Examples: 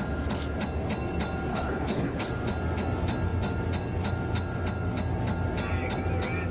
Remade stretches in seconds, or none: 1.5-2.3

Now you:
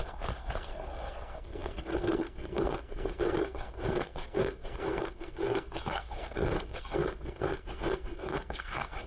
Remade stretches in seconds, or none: 0.0-9.1